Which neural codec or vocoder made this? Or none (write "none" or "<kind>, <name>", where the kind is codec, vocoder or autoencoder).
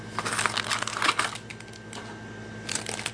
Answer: none